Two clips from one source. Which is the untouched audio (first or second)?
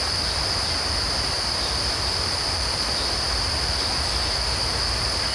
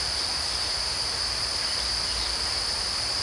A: first